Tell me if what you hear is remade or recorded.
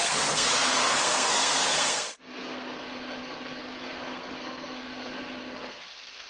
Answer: remade